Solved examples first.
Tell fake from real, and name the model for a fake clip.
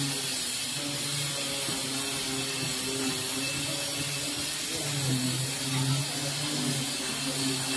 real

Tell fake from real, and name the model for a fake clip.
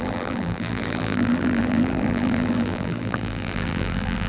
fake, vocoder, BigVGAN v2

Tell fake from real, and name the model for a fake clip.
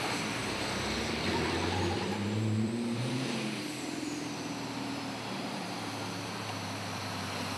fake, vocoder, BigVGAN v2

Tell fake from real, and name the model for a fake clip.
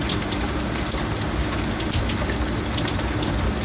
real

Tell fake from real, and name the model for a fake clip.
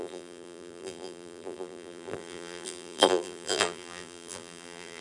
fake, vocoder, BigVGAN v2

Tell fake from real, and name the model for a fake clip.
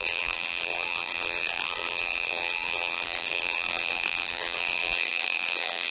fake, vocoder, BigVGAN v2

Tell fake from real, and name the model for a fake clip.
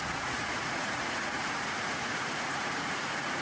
fake, vocoder, Vocos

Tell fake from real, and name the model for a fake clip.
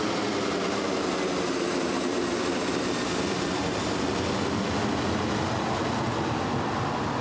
real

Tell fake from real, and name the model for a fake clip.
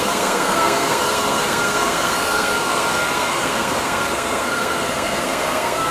fake, codec, SNAC